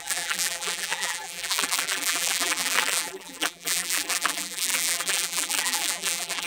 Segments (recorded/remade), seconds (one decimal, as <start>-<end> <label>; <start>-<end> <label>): 0.0-6.5 remade